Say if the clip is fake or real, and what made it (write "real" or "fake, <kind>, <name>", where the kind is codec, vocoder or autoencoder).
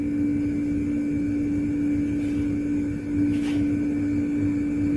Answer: real